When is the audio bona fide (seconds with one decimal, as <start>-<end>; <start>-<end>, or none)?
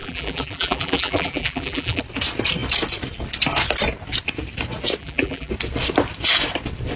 2.0-5.0; 5.5-7.0